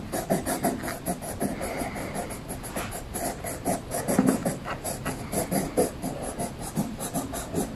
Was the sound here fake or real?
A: real